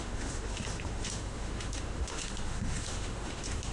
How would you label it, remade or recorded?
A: remade